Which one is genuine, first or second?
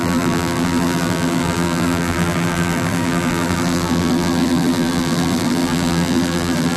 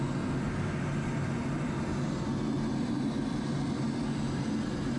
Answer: second